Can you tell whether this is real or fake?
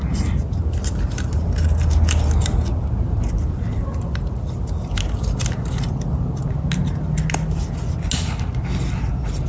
real